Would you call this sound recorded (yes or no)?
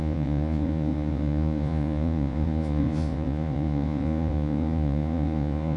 no